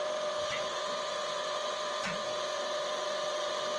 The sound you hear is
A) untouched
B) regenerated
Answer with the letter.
B